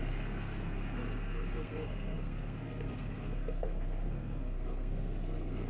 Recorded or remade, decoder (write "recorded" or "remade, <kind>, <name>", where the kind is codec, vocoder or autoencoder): remade, codec, SNAC